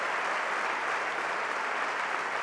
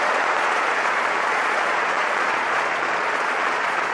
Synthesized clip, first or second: second